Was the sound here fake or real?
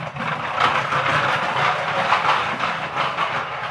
fake